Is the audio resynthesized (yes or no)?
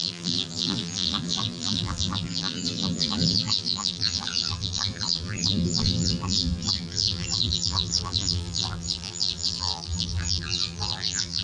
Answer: yes